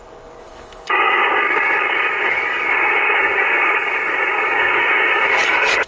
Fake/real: fake